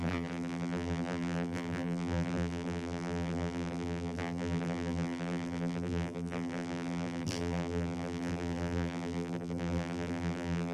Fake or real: fake